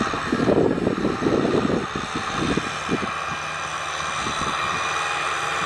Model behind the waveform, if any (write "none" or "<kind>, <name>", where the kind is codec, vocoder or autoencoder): none